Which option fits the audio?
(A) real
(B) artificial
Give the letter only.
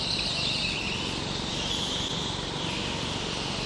A